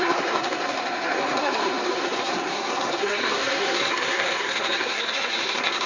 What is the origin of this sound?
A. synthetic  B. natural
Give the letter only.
A